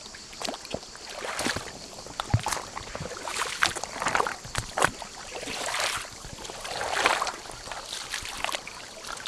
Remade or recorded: recorded